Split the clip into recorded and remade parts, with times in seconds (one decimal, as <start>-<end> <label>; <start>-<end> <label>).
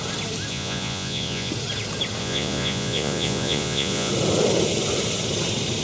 0.0-0.5 recorded; 0.5-1.5 remade; 1.5-2.2 recorded; 2.2-4.1 remade; 4.1-5.8 recorded